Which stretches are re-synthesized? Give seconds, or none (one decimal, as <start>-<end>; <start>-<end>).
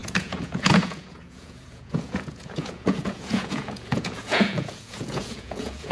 0.0-5.9